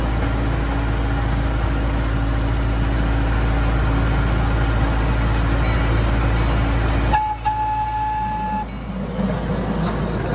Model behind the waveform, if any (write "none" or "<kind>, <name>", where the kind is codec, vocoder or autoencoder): none